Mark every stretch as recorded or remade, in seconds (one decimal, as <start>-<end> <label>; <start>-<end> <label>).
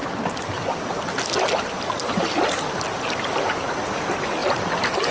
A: 0.0-5.1 recorded